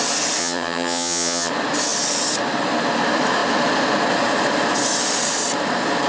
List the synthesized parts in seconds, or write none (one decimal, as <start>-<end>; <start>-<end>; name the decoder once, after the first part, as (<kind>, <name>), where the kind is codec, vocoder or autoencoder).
0.4-1.5 (vocoder, HiFi-GAN)